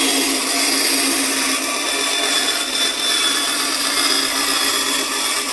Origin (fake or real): real